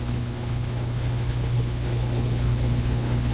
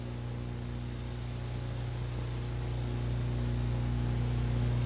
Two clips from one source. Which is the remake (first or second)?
first